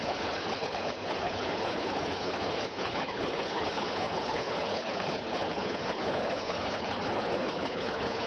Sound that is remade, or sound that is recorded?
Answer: remade